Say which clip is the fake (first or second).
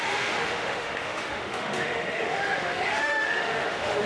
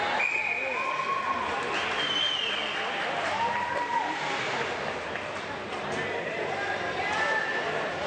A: first